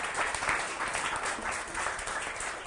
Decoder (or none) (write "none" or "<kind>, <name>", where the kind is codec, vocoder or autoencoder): vocoder, BigVGAN v2